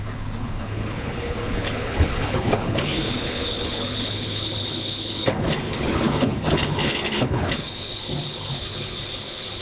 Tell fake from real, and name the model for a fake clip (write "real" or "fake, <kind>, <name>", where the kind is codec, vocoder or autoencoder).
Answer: fake, codec, HILCodec